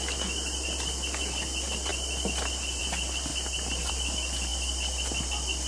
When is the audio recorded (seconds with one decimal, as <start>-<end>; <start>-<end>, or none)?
0.0-5.7